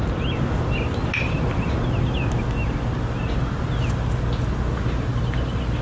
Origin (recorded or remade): recorded